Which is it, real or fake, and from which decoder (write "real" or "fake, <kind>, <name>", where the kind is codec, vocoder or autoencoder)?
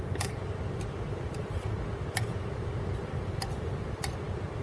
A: real